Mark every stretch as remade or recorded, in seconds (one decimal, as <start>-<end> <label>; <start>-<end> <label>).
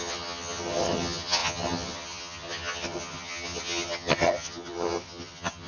0.0-5.7 remade